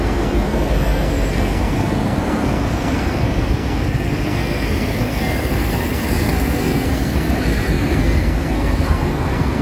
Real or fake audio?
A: fake